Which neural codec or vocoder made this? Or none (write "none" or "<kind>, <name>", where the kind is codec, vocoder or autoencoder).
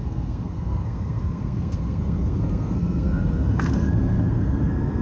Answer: codec, SNAC